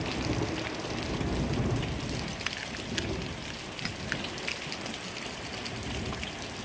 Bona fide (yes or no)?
yes